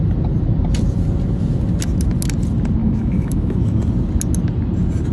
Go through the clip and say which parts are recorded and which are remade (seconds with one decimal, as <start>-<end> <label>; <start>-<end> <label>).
0.0-2.8 recorded; 2.8-3.8 remade; 3.8-5.1 recorded